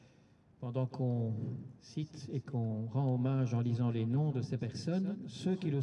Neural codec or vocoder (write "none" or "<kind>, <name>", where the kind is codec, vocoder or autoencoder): none